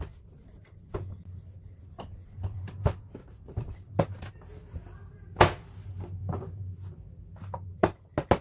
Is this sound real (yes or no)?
yes